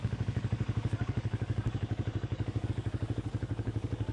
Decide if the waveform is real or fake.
fake